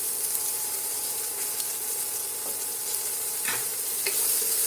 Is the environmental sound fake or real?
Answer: real